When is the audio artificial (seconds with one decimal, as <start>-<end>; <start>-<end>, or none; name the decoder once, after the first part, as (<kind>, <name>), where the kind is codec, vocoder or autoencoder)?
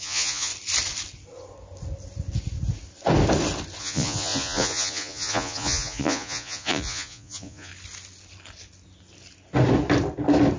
0.0-0.5 (vocoder, Vocos); 3.8-7.7